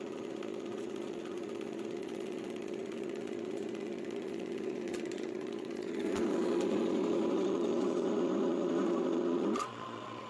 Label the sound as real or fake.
fake